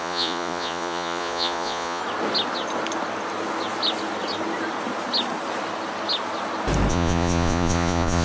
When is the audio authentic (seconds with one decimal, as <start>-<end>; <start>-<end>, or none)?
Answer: 2.0-6.9